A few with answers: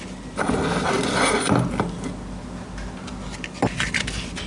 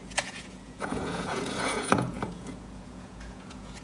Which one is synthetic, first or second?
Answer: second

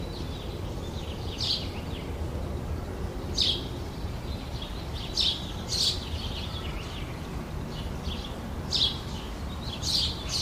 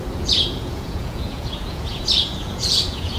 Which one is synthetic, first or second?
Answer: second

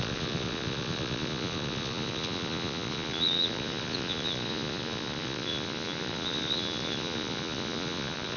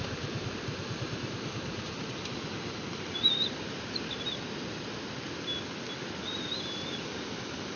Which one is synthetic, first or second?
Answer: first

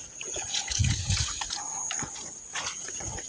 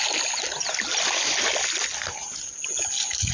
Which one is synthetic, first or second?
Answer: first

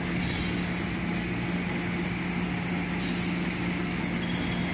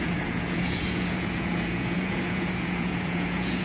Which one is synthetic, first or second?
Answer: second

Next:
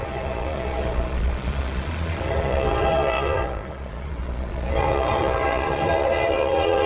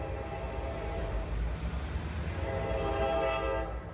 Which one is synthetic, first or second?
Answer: first